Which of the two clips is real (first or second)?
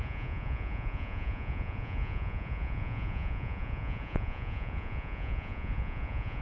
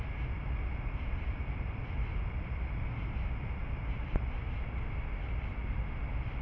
second